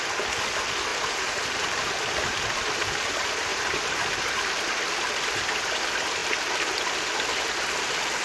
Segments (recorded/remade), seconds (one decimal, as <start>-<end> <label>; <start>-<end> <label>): 0.0-0.9 recorded; 0.9-2.1 remade; 2.1-3.5 recorded; 3.5-4.2 remade; 4.2-8.2 recorded